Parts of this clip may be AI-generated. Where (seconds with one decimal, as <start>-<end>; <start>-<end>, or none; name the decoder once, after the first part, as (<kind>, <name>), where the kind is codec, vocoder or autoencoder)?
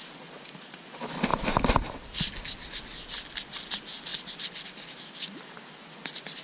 none